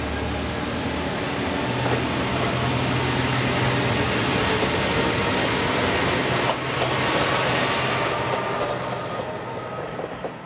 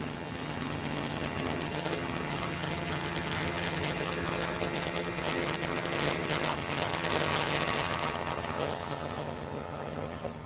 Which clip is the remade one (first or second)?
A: second